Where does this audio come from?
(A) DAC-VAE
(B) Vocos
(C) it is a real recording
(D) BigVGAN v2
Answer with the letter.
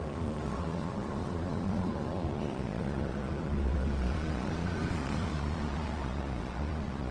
B